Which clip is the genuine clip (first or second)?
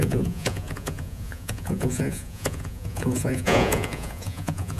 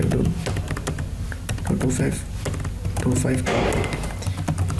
second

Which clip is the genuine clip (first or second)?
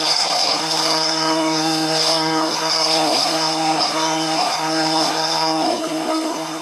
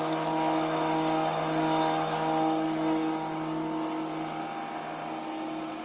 second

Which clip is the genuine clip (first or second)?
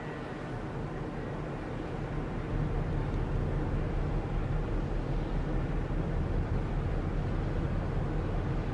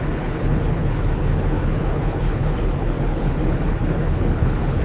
first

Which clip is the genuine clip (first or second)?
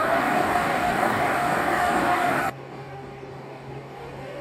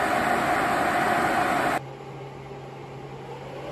second